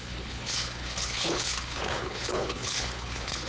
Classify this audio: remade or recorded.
remade